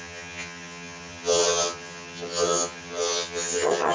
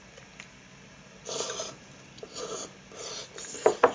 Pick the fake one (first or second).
first